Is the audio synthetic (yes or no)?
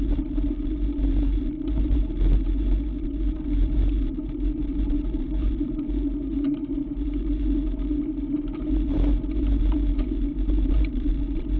yes